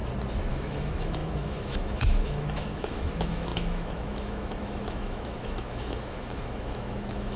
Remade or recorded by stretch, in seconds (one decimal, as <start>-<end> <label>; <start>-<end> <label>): 0.0-0.5 recorded; 0.5-7.4 remade